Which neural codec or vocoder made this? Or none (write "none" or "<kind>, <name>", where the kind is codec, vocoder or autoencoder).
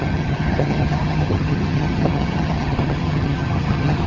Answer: vocoder, HiFi-GAN